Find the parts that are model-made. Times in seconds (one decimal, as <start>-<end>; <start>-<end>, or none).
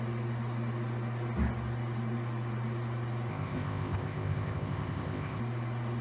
3.3-5.4